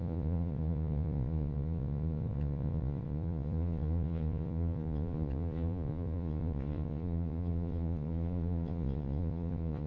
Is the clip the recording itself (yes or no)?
no